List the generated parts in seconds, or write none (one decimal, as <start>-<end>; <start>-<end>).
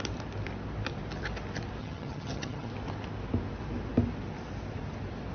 1.8-2.7